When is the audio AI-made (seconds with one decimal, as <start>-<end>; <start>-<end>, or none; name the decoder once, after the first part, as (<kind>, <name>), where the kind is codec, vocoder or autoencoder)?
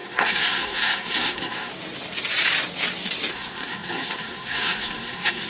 0.0-1.7 (codec, SNAC); 3.3-5.5